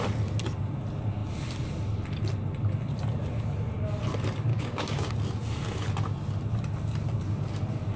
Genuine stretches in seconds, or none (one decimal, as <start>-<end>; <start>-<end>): 0.0-4.5; 5.1-8.0